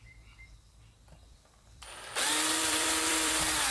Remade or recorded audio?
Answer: remade